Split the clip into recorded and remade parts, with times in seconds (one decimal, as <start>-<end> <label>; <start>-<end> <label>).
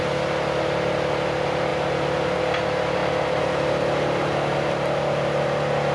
0.0-5.9 recorded